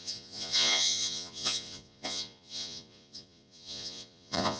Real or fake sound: fake